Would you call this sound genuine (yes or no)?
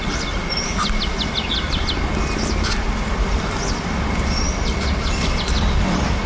yes